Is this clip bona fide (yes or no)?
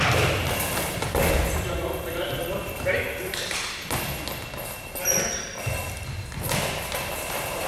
yes